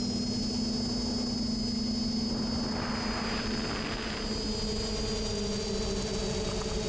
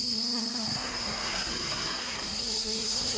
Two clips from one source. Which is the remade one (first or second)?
second